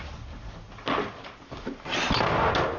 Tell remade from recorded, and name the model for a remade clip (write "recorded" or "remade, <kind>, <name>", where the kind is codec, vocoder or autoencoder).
recorded